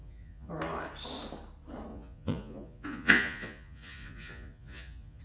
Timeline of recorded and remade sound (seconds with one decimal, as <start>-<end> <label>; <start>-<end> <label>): 0.0-0.5 remade; 0.5-1.9 recorded; 1.9-5.2 remade